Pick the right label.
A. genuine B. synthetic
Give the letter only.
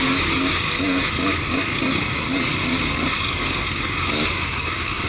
B